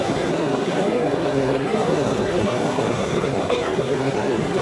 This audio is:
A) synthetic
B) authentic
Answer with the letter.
A